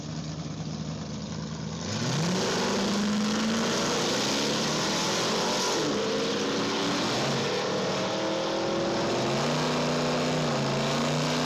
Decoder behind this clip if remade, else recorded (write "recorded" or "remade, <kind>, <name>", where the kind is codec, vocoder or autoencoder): recorded